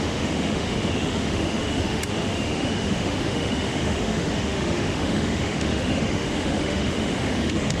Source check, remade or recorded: remade